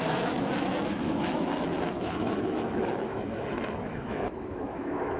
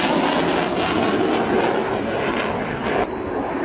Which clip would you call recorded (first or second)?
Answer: second